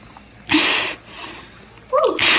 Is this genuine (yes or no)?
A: yes